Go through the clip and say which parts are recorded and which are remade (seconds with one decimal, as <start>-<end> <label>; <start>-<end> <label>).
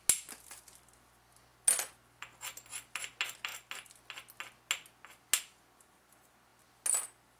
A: 0.0-7.4 recorded